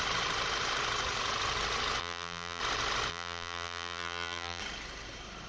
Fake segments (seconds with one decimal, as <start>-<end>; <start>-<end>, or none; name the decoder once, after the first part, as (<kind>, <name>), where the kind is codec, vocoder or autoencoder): 2.0-2.6 (vocoder, BigVGAN v2); 3.1-4.6